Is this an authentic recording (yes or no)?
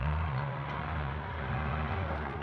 no